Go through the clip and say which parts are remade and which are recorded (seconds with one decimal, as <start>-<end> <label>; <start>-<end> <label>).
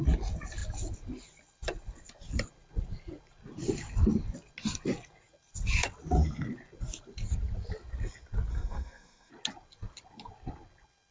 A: 0.0-8.5 recorded; 8.5-9.3 remade; 9.3-11.1 recorded